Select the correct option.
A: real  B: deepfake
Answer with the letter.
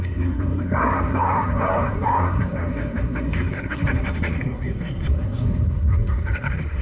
B